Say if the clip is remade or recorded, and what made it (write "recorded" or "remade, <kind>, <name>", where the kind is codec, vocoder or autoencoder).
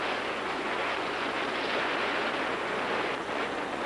remade, vocoder, Vocos